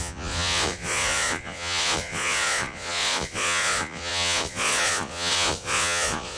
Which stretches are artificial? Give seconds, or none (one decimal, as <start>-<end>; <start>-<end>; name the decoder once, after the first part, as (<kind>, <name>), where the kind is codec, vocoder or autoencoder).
0.0-6.4 (vocoder, Vocos)